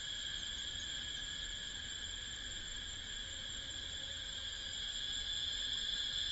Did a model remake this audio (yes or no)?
no